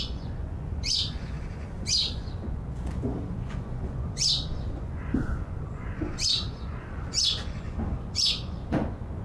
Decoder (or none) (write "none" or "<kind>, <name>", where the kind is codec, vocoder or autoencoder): vocoder, Vocos